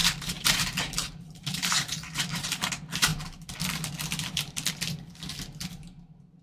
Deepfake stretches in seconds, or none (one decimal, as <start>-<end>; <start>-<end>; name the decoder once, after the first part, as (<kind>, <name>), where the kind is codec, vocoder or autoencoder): 0.0-2.7 (vocoder, BigVGAN v2)